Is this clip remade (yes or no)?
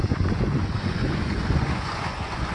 yes